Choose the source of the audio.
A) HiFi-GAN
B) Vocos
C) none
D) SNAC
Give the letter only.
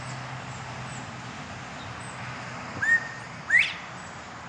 C